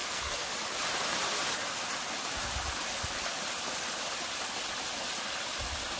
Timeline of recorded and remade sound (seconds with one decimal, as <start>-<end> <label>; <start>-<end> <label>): 0.0-0.5 remade; 0.5-6.0 recorded